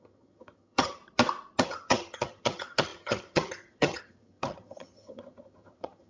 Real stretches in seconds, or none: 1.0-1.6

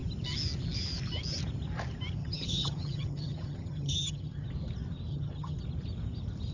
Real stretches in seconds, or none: 0.0-2.2; 4.5-5.1; 5.6-6.5